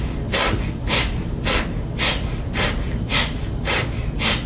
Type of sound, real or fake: real